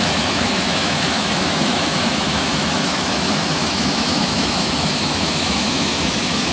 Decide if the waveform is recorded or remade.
remade